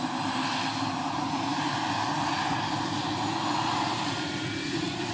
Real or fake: real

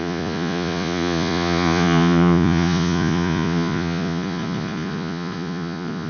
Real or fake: fake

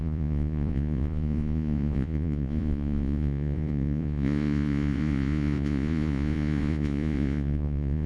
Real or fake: fake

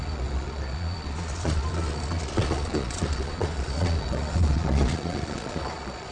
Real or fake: fake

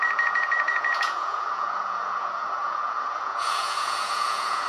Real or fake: fake